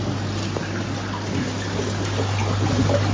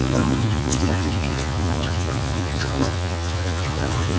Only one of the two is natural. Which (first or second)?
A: first